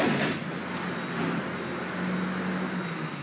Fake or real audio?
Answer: real